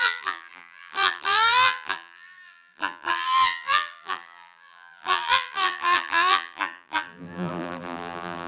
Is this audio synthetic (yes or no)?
yes